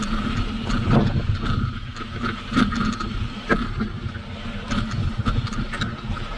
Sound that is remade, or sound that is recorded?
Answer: remade